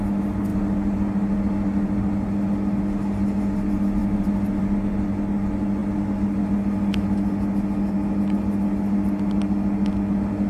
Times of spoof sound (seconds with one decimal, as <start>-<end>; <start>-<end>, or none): none